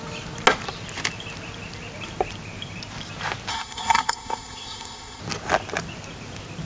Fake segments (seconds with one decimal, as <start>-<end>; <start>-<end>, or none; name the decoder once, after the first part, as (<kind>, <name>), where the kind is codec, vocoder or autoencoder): 3.5-5.2 (codec, SNAC)